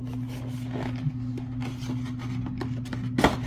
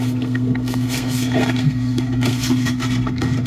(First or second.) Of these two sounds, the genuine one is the first